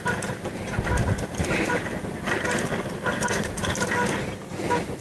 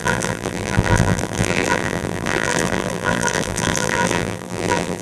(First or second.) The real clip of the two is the first